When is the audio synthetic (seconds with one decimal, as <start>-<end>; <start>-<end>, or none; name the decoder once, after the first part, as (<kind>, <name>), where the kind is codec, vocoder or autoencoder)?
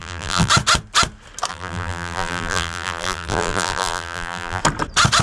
0.0-0.5 (vocoder, BigVGAN v2); 1.5-4.6